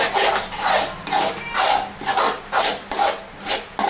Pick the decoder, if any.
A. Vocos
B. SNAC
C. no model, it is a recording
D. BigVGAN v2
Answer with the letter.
C